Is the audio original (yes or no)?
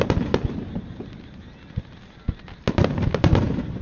yes